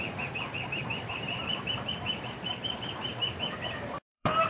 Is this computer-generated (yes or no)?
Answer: yes